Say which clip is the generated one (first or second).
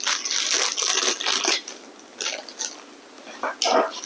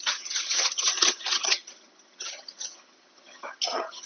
second